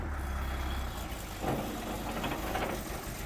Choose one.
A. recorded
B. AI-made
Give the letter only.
A